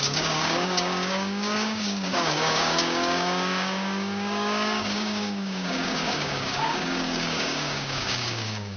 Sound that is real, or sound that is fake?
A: fake